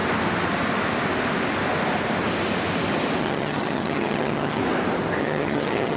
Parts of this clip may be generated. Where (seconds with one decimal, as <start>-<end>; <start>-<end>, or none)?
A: 3.2-4.6; 5.2-6.0